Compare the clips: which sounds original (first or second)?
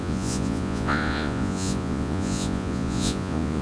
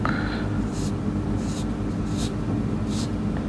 second